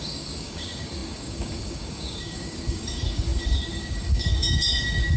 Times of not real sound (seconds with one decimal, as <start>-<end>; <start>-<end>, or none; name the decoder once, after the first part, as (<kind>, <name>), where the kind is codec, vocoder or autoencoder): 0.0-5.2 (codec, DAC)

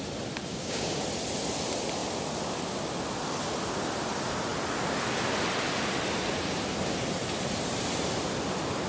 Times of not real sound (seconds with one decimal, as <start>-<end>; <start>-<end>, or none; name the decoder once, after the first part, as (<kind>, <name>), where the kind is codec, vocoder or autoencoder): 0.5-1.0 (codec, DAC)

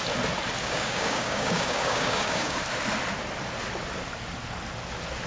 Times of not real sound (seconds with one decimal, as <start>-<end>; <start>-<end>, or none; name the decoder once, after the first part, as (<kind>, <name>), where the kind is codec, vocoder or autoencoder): 0.6-2.6 (codec, DAC)

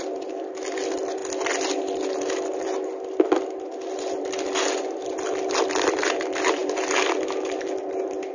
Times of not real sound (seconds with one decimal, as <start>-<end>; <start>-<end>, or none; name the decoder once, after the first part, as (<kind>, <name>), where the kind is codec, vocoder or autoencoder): none

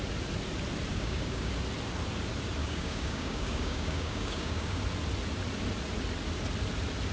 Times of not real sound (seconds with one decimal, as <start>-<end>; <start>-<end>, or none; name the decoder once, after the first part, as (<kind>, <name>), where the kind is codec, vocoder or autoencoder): 0.9-1.5 (codec, DAC); 2.6-4.8